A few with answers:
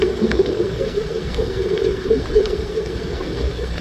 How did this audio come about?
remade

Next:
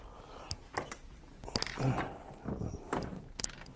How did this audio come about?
recorded